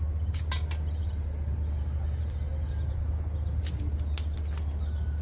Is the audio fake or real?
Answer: real